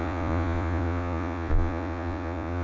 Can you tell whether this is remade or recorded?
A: remade